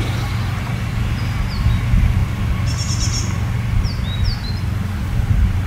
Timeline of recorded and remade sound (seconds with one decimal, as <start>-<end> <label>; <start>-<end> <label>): 0.0-5.7 recorded